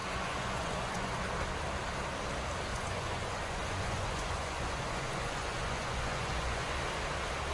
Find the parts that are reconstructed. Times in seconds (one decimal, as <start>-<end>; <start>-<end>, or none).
0.0-1.2; 2.7-6.7